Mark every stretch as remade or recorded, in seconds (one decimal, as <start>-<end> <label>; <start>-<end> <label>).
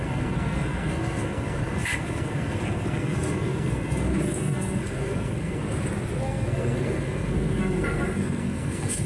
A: 0.0-5.6 remade; 5.6-6.2 recorded; 6.2-9.1 remade